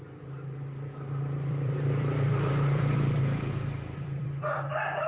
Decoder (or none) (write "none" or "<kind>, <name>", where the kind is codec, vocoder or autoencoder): vocoder, BigVGAN v2